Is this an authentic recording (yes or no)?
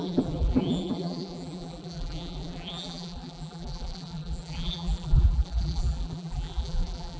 no